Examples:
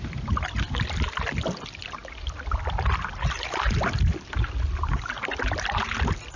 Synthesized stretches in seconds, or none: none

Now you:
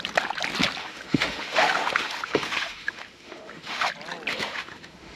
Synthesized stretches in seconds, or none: 0.8-3.9 (autoencoder, DAC-VAE); 4.3-5.2

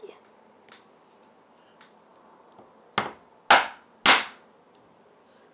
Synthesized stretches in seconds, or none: none

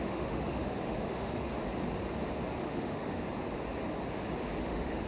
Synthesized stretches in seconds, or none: 0.0-1.5 (autoencoder, DAC-VAE); 2.6-3.2; 4.6-5.1